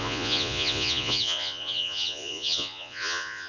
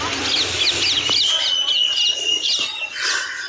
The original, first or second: second